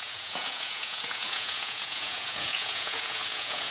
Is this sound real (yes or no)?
no